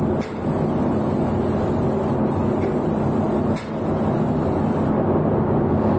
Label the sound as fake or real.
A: real